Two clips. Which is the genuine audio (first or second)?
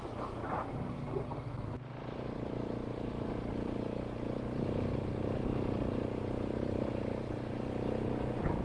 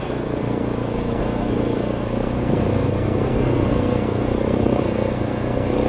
first